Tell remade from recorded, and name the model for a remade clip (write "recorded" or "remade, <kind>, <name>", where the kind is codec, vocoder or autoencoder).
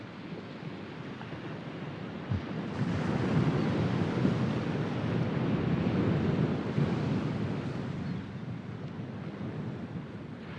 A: recorded